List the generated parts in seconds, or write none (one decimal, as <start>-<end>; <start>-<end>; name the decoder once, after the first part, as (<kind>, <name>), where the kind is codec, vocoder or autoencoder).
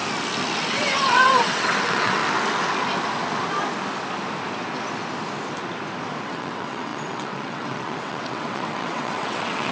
0.7-2.2 (vocoder, WaveNeXt); 6.2-9.7